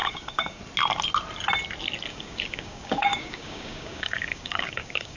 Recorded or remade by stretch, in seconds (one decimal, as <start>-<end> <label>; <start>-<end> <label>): 0.0-0.6 remade; 0.6-2.1 recorded; 2.1-5.2 remade